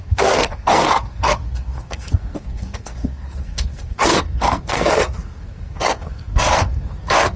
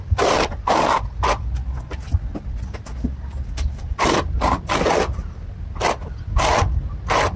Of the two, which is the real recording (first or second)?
second